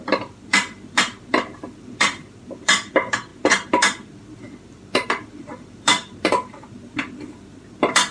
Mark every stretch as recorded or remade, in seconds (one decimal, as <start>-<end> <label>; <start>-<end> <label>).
0.0-8.1 remade